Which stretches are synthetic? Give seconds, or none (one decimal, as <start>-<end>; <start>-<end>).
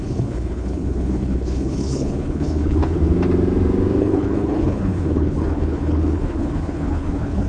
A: 0.0-3.0; 4.0-7.5